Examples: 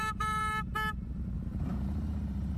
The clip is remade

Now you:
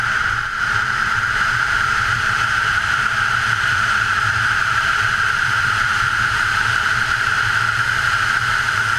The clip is remade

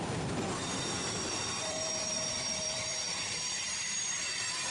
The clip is remade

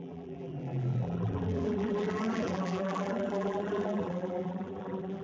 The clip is remade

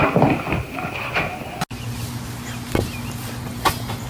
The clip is recorded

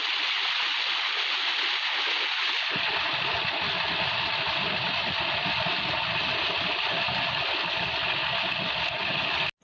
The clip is recorded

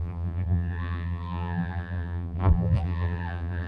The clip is remade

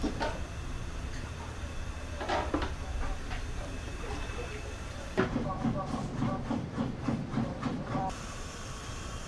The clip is remade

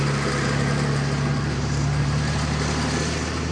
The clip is remade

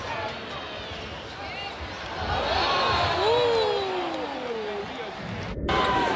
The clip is recorded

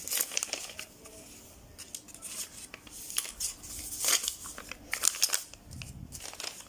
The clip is recorded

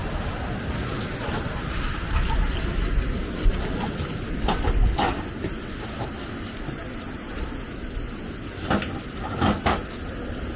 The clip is recorded